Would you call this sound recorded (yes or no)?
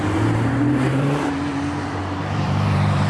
no